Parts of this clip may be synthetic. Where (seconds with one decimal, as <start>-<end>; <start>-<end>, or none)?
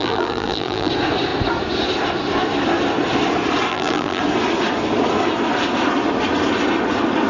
0.0-0.9; 3.7-4.2